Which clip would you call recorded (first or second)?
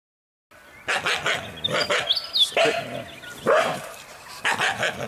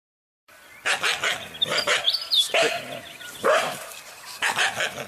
first